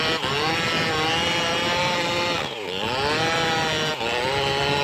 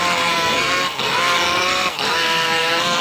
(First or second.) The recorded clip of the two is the first